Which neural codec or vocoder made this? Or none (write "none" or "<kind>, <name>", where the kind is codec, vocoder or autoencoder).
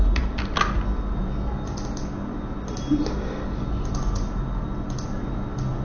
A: none